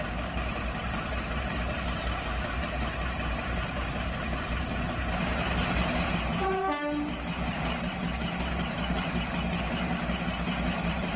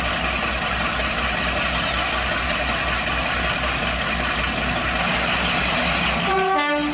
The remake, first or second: first